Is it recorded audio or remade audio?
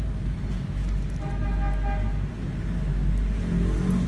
recorded